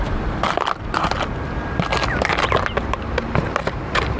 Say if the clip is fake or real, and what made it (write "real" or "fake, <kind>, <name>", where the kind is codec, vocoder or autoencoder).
real